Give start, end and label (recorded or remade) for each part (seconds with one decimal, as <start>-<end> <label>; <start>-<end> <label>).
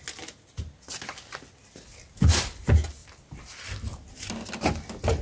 0.0-5.2 recorded